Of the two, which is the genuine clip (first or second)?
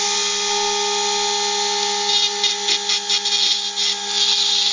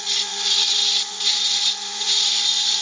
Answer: first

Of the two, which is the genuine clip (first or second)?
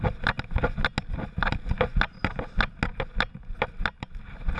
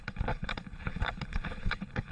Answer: first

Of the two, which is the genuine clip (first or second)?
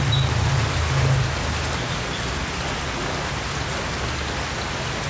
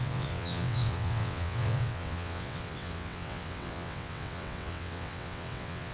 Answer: first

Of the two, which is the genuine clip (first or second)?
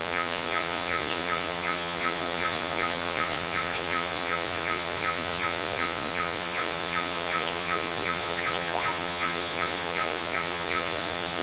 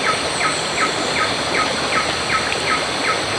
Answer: second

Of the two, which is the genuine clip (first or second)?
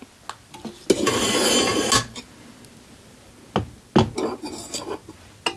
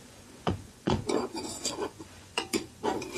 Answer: first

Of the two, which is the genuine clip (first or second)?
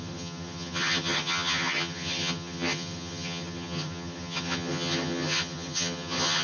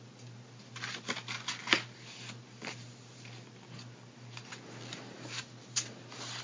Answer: second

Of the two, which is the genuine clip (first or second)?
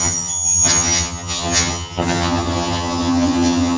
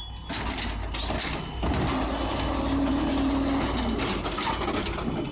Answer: second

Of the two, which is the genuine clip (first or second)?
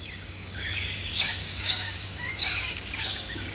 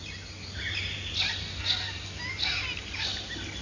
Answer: second